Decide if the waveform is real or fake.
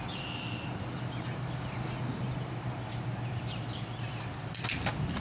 real